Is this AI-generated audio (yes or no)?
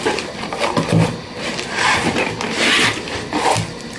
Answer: no